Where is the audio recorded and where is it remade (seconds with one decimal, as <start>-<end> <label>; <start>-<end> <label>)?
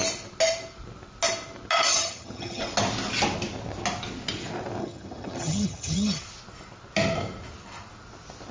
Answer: 0.0-1.9 recorded; 1.9-2.6 remade; 2.6-4.8 recorded; 4.8-6.2 remade; 6.2-8.5 recorded